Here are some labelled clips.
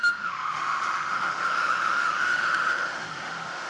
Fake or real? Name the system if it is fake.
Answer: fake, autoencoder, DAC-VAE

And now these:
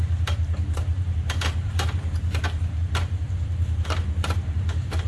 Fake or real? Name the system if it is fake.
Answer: fake, vocoder, BigVGAN v2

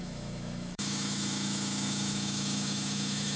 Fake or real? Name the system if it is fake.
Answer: fake, autoencoder, DAC-VAE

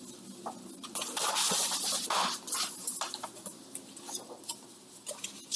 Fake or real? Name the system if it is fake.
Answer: real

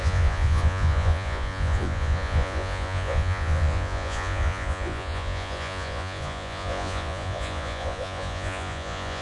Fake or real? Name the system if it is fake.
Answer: fake, vocoder, Vocos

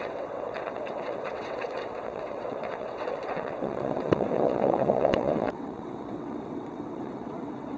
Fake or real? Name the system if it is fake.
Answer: fake, vocoder, WaveNeXt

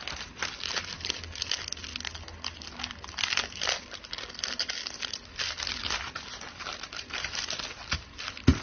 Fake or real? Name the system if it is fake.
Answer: real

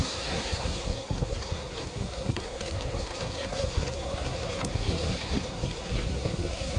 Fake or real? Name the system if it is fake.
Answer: fake, codec, SNAC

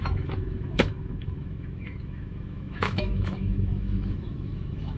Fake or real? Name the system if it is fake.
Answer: fake, autoencoder, DAC-VAE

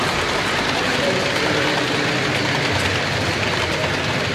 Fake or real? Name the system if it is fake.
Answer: real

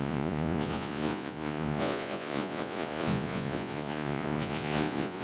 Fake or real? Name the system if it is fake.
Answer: fake, vocoder, Vocos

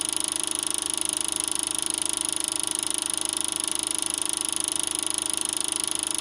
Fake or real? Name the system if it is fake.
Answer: real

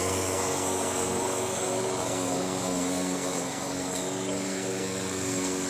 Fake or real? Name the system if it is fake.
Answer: fake, codec, SNAC